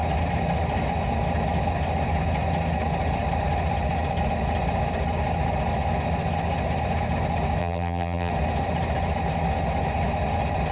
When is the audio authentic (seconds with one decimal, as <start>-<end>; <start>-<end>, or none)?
0.0-7.6; 8.3-10.7